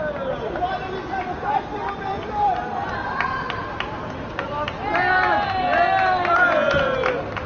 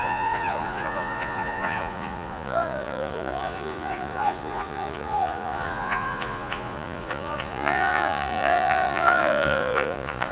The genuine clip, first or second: first